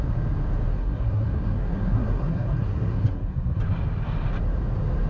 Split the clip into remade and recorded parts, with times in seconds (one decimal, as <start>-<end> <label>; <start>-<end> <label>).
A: 0.0-0.7 recorded; 0.7-3.6 remade; 3.6-5.1 recorded